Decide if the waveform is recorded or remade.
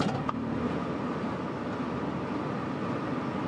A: recorded